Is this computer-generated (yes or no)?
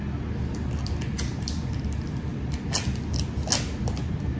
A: no